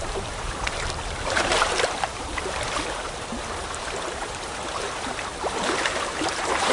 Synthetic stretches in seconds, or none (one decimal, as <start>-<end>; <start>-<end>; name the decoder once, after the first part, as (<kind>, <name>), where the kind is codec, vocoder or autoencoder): 0.0-5.3 (vocoder, BigVGAN v2); 5.8-6.7